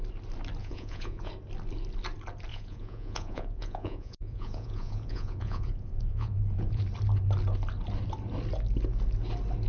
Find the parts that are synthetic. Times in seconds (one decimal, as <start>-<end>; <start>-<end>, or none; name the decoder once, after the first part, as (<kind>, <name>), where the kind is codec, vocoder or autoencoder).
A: 0.6-1.3 (vocoder, Vocos); 2.5-6.8